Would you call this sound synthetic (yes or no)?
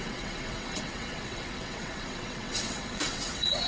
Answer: yes